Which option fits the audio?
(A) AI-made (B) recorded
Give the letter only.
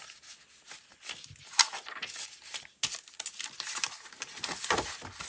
B